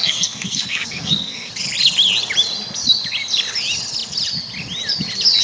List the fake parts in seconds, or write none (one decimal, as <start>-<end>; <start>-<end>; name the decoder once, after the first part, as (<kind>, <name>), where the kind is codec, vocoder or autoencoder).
0.0-1.5 (codec, SNAC)